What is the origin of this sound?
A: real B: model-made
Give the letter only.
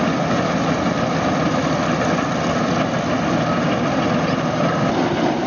A